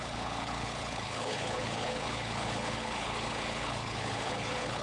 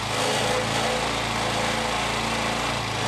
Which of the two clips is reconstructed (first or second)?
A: first